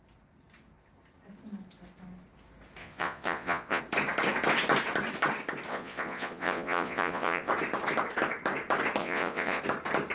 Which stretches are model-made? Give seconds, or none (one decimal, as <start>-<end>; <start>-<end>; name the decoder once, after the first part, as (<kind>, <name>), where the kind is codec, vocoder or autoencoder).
2.8-3.8 (vocoder, Vocos); 5.7-7.5; 9.0-9.6